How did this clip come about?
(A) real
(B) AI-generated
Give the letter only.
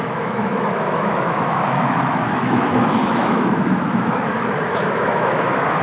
B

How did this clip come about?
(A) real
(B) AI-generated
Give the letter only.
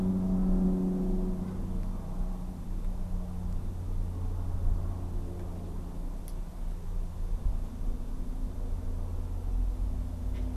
A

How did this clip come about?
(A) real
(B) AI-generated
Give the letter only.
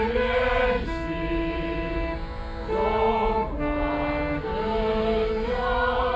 A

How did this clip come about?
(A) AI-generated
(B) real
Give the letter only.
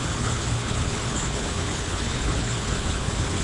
A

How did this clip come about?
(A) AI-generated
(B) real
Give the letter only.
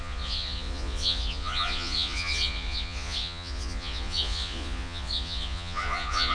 A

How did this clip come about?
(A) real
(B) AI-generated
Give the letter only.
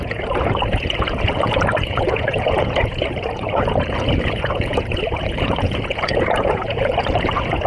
B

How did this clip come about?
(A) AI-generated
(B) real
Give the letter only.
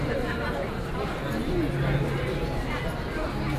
B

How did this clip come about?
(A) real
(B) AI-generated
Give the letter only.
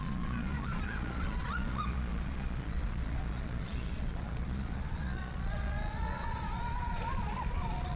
B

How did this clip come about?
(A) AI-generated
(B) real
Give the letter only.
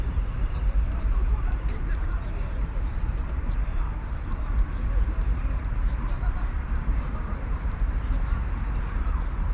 A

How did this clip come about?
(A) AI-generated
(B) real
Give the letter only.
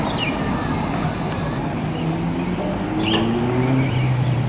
B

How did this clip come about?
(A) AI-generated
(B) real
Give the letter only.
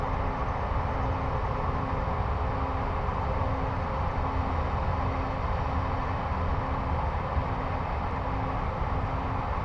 B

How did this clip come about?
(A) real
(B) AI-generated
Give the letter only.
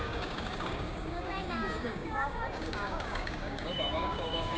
B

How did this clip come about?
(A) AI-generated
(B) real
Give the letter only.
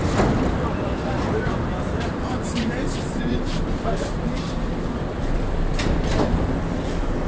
A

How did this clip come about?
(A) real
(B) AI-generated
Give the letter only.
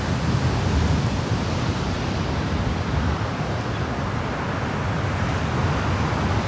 A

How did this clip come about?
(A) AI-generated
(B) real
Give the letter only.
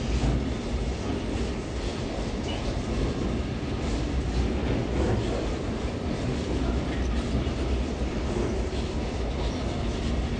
B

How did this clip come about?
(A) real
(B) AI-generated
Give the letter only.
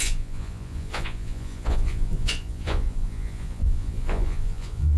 B